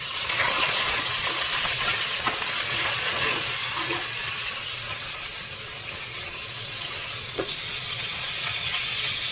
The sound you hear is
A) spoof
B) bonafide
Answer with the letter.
A